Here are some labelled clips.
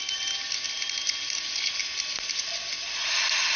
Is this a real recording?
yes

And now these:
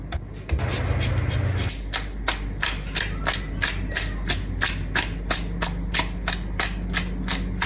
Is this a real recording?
yes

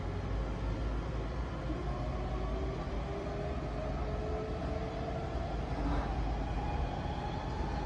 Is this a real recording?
yes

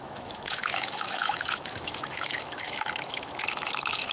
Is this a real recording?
no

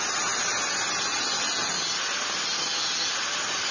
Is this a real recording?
yes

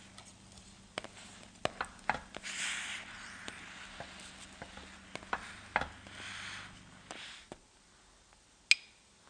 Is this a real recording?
yes